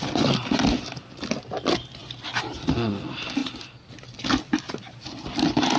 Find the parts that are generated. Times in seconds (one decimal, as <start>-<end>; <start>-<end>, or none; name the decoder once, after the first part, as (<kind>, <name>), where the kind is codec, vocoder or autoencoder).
none